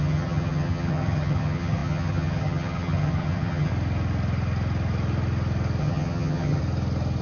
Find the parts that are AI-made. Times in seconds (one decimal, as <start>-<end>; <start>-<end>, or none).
0.0-3.7; 5.8-6.6